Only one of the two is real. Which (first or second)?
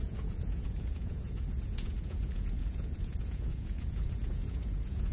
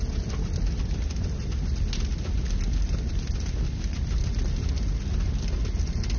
second